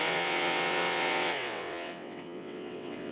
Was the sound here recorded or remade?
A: remade